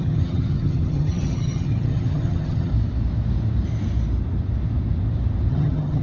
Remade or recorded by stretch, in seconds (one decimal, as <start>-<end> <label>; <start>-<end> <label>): 0.0-2.7 remade; 2.7-5.5 recorded; 5.5-6.0 remade